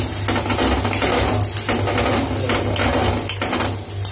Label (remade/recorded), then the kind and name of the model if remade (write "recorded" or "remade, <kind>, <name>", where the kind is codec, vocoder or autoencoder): recorded